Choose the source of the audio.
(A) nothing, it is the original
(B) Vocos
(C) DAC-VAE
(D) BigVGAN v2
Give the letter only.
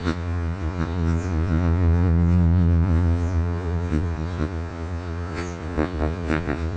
B